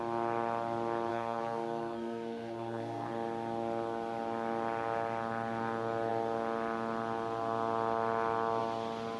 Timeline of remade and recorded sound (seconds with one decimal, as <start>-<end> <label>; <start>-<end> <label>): 0.0-1.1 recorded; 1.1-3.1 remade; 3.1-9.2 recorded